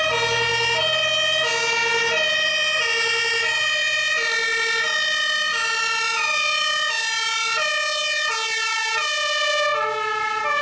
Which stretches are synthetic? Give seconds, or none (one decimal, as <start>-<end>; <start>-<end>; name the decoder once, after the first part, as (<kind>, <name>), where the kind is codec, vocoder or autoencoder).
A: none